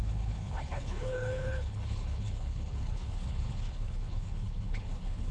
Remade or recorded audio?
remade